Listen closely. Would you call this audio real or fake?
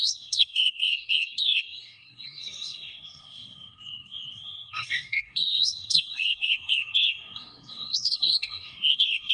fake